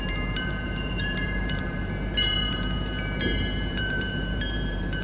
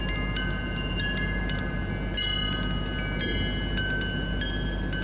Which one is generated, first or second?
first